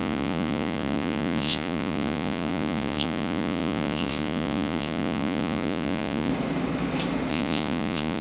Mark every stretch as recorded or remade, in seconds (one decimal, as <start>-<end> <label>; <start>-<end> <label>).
0.0-6.3 remade; 6.3-7.3 recorded; 7.3-8.2 remade